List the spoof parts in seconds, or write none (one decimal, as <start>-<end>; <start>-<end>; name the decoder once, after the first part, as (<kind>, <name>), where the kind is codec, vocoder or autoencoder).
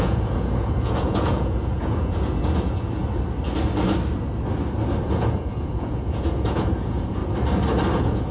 0.0-3.0 (vocoder, Vocos); 5.0-7.2; 7.9-8.3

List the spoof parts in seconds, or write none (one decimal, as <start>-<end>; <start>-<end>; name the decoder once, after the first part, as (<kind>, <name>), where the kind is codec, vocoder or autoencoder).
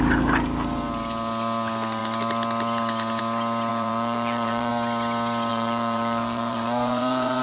3.7-4.7 (vocoder, Vocos); 5.5-7.4